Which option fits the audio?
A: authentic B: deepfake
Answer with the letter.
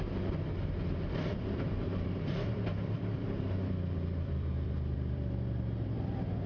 B